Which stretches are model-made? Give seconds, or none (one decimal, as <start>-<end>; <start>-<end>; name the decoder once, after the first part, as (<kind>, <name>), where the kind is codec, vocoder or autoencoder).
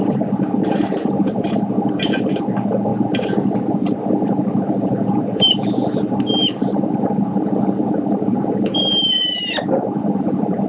0.0-2.9 (vocoder, BigVGAN v2); 3.7-10.7